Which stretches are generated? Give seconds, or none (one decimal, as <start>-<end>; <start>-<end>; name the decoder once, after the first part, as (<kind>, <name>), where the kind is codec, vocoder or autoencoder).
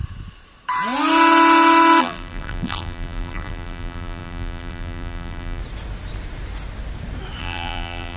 2.0-5.6 (vocoder, BigVGAN v2); 7.4-8.2